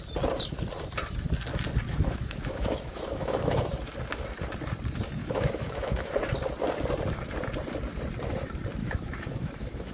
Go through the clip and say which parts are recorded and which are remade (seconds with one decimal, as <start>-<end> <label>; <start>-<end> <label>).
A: 0.0-1.9 recorded; 1.9-3.7 remade; 3.7-5.2 recorded; 5.2-6.1 remade; 6.1-8.8 recorded; 8.8-9.9 remade